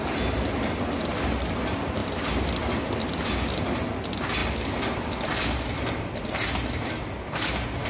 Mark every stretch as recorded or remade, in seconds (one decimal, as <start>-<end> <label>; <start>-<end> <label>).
0.0-7.9 recorded